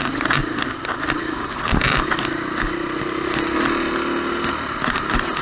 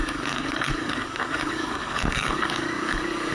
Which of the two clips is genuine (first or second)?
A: first